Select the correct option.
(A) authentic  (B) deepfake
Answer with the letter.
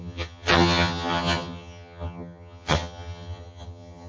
B